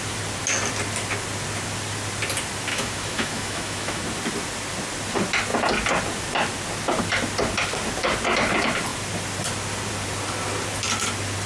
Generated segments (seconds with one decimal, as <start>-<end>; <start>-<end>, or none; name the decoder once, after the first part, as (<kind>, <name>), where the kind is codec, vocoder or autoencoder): 2.7-4.0 (autoencoder, DAC-VAE)